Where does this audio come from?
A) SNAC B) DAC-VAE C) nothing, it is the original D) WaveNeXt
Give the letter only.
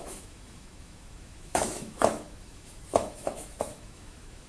B